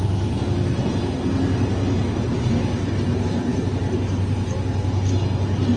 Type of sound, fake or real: real